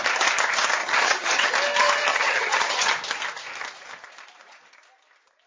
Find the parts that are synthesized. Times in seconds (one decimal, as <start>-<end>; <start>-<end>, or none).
0.8-1.5; 2.1-2.9